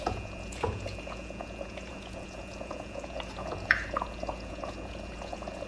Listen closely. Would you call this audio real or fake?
fake